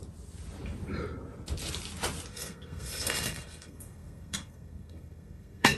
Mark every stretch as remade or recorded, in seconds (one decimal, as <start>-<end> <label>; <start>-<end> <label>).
0.0-2.3 recorded; 2.3-5.8 remade